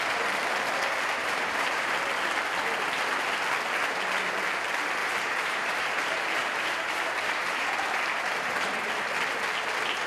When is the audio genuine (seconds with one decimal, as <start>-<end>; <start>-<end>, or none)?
0.0-1.2; 2.0-5.0; 8.9-10.1